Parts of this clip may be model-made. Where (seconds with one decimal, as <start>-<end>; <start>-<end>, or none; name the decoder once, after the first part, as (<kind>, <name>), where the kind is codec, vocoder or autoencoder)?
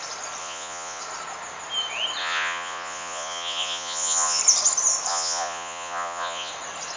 0.4-1.0 (vocoder, Vocos); 2.2-4.4; 5.1-6.5